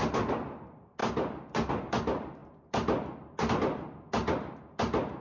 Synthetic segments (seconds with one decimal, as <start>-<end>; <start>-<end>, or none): none